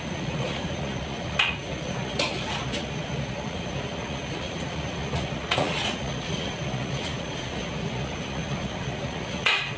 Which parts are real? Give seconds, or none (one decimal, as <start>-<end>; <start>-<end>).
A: none